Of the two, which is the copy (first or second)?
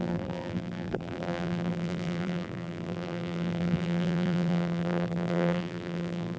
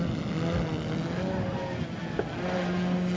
first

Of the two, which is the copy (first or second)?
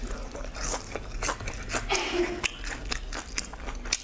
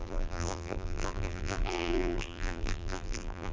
second